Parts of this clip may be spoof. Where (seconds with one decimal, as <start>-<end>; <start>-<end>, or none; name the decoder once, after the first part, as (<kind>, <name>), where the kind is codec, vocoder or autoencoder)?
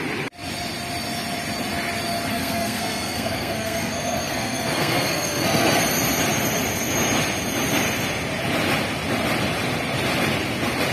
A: 2.3-5.8 (codec, SNAC)